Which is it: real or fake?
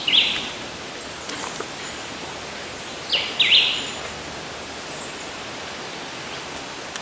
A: fake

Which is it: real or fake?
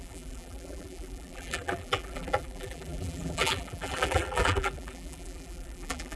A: fake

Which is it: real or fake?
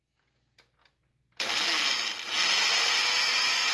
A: real